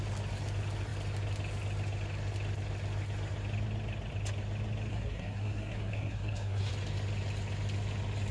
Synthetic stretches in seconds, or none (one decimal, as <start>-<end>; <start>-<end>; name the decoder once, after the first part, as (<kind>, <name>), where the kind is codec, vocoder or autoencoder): 4.9-6.7 (codec, SNAC)